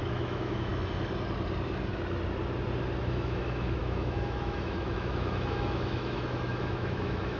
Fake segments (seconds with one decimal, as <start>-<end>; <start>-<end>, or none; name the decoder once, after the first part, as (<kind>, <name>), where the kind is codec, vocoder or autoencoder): 0.0-0.7 (autoencoder, DAC-VAE); 3.0-7.4